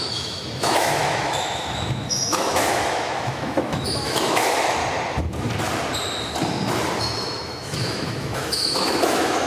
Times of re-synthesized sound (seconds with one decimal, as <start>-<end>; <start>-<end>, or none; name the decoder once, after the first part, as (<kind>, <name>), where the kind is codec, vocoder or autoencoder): 0.0-4.8 (autoencoder, DAC-VAE); 7.0-9.5